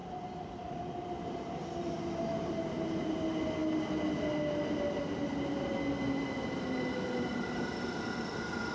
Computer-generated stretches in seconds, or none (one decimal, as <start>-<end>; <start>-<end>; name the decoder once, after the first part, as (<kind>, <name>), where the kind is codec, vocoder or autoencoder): 0.0-2.0 (vocoder, BigVGAN v2)